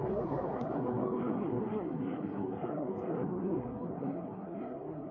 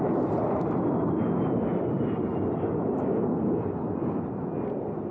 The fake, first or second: first